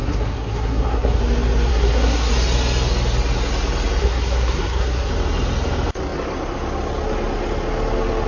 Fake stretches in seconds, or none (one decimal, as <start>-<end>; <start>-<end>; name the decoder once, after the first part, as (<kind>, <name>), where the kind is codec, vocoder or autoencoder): 0.0-1.2 (codec, SNAC); 1.7-2.3; 4.0-5.1